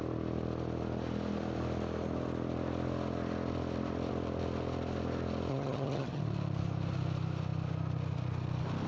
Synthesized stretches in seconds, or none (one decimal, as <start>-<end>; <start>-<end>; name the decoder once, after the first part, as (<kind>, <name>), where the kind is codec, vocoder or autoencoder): 5.5-6.2 (vocoder, HiFi-GAN)